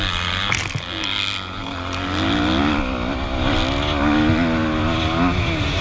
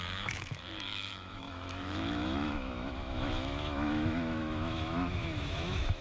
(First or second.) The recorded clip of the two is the first